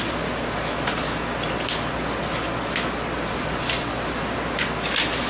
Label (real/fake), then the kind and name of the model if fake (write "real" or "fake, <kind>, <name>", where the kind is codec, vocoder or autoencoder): real